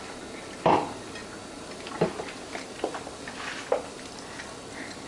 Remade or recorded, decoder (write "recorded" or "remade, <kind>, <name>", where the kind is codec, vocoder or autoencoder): recorded